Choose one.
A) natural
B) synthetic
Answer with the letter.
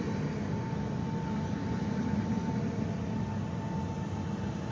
A